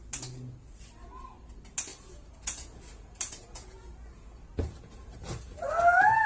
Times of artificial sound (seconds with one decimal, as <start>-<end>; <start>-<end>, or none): 1.9-5.7